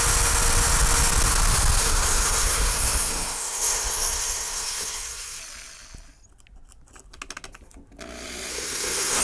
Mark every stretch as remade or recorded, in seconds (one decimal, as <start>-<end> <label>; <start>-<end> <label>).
0.0-1.8 recorded; 1.8-5.4 remade; 5.4-8.5 recorded; 8.5-9.2 remade